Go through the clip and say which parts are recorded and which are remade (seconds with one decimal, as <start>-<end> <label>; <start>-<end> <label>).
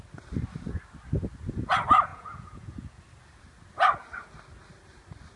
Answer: 0.0-2.1 recorded; 2.1-3.0 remade; 3.0-5.4 recorded